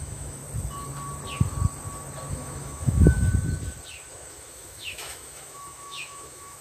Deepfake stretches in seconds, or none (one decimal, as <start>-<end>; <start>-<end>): 0.0-0.4; 2.3-3.3; 4.1-6.6